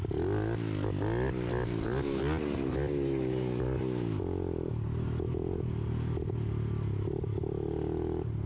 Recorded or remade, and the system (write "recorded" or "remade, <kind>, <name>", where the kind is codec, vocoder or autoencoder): recorded